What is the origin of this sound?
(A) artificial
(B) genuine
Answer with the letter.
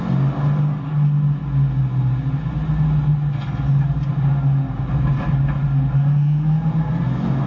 B